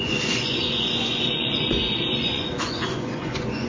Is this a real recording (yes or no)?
no